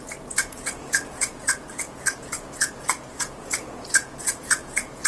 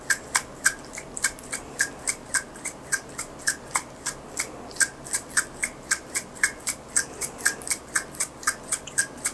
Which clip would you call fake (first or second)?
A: first